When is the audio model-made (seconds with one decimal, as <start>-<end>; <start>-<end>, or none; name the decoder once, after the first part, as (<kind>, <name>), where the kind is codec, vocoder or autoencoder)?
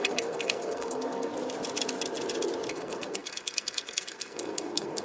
0.0-1.3 (codec, SNAC); 2.7-5.0